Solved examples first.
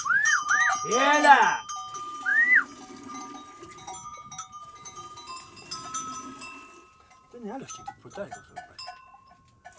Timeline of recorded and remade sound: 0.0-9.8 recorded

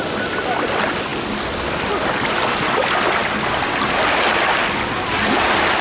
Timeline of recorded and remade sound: 0.0-5.8 recorded